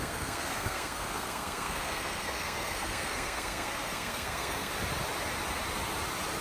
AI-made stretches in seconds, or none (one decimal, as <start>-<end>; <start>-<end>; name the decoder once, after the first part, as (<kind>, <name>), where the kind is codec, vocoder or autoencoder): 0.0-4.7 (codec, SNAC)